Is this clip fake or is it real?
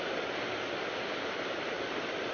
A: real